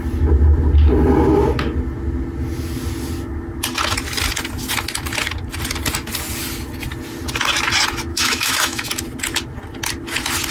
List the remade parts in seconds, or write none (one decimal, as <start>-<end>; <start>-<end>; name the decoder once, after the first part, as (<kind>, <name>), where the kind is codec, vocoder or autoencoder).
8.1-8.9 (autoencoder, DAC-VAE)